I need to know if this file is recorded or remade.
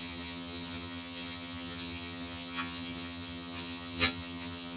remade